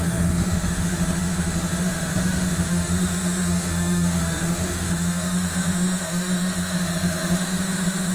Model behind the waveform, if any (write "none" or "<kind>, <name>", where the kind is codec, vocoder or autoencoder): autoencoder, DAC-VAE